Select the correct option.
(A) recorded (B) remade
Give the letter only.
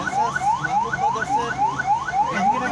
A